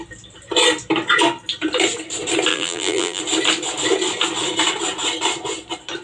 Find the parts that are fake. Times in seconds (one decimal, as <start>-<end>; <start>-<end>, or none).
2.5-3.2